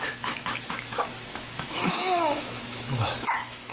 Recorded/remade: remade